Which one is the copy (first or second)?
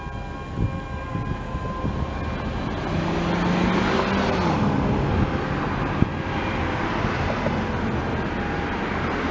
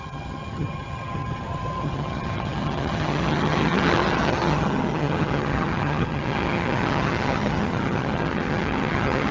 second